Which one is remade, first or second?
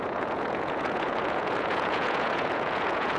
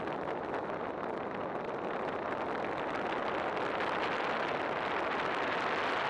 first